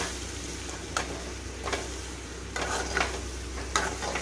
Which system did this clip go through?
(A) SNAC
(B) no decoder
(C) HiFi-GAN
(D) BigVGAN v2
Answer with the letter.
B